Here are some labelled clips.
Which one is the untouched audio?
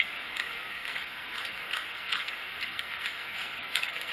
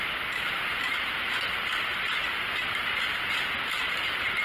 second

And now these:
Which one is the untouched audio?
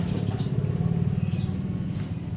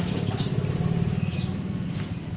first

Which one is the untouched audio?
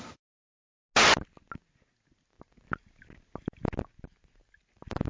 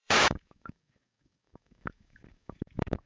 first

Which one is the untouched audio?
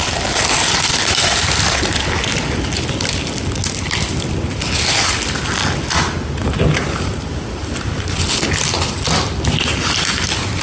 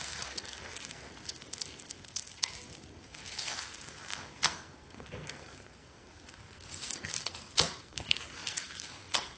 first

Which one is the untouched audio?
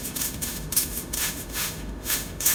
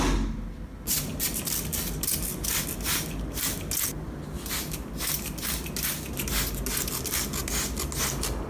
second